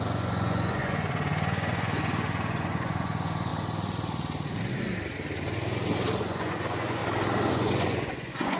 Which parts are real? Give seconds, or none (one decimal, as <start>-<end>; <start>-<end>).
3.5-6.2; 7.0-7.5